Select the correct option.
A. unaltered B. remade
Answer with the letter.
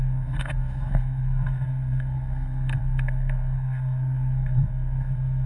B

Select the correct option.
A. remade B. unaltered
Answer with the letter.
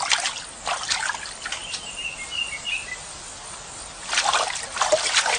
B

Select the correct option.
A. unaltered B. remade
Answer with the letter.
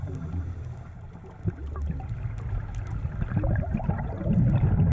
A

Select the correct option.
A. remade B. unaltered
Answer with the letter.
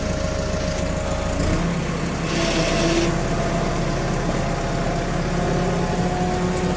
B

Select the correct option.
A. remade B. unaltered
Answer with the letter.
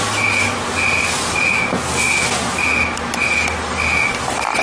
B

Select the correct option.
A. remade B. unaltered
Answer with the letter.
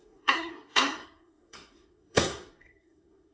A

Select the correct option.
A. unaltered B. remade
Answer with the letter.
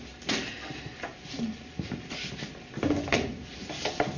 A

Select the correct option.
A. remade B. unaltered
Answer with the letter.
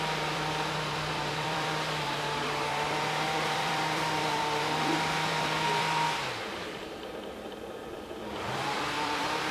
A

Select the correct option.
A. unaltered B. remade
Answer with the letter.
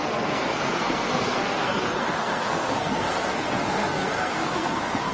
B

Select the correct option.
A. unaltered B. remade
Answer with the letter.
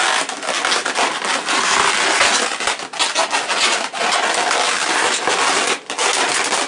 A